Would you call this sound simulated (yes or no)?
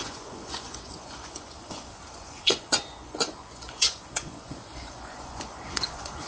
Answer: yes